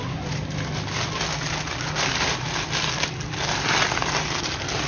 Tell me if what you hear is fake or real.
real